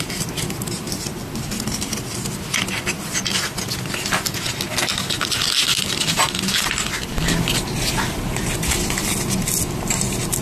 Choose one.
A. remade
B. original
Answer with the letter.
B